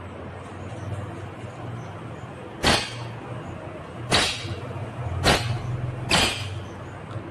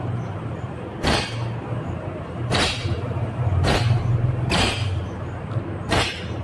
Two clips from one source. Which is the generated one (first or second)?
second